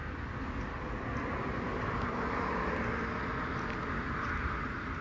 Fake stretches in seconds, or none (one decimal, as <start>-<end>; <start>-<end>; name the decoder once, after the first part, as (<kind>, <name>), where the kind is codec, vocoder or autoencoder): none